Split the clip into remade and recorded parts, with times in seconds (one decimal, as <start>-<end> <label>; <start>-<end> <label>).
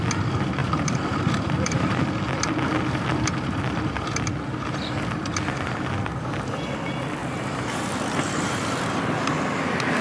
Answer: 0.0-0.6 recorded; 0.6-2.0 remade; 2.0-7.2 recorded; 7.2-8.8 remade; 8.8-10.0 recorded